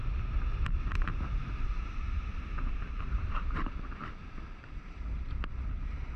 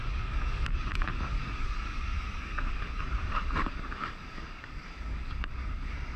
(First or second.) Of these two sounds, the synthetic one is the second